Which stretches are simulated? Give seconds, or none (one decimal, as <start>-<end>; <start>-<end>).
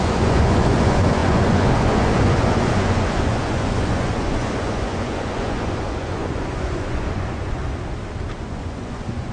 0.0-7.6; 8.4-9.3